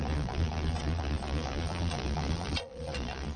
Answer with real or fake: fake